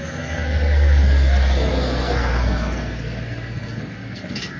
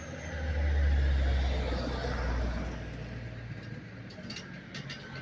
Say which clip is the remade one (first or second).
first